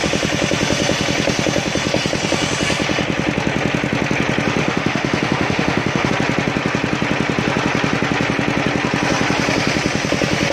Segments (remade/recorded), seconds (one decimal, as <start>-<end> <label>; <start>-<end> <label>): 0.0-4.6 recorded; 4.6-6.1 remade; 6.1-10.5 recorded